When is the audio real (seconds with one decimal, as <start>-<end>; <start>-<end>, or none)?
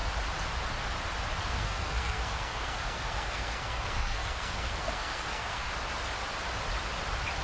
0.0-1.4; 5.7-7.4